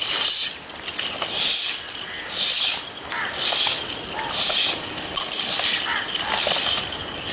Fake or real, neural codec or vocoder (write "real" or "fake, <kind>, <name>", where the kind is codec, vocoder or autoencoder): real